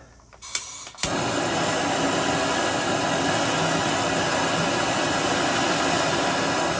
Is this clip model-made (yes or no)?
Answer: no